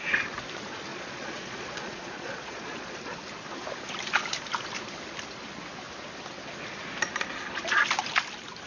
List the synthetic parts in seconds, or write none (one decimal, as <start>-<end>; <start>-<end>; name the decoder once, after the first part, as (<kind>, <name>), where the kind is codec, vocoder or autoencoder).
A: 0.9-3.0 (vocoder, Vocos)